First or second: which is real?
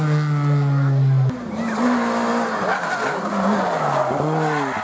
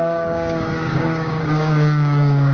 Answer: first